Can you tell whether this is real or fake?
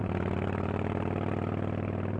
fake